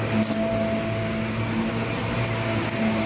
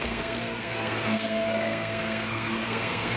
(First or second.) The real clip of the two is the first